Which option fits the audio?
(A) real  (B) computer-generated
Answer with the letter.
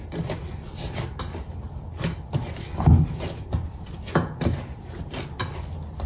A